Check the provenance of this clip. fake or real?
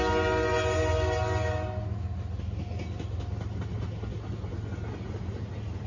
real